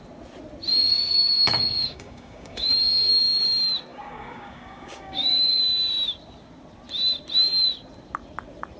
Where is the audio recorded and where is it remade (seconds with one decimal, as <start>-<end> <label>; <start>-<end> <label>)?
0.0-0.7 recorded; 0.7-3.1 remade; 3.1-3.9 recorded; 3.9-5.6 remade; 5.6-8.8 recorded